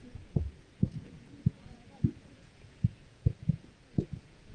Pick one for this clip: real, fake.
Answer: fake